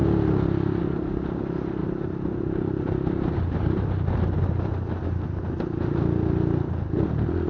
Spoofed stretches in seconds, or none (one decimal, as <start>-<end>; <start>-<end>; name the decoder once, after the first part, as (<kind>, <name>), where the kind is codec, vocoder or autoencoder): 1.8-5.4 (vocoder, BigVGAN v2)